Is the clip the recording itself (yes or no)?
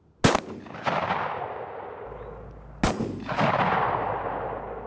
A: yes